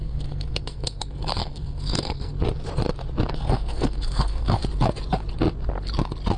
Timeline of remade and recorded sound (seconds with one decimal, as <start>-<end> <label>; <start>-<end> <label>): 0.0-2.3 remade; 2.3-3.3 recorded; 3.3-4.6 remade; 4.6-6.4 recorded